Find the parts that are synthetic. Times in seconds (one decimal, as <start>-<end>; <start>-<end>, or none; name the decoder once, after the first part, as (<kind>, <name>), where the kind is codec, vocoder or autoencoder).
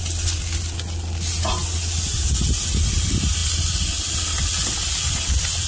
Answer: none